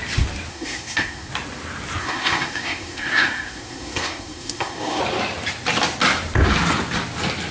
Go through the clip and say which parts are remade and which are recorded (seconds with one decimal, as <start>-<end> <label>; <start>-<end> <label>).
0.0-0.5 recorded; 0.5-1.3 remade; 1.3-2.0 recorded; 2.0-5.0 remade; 5.0-7.5 recorded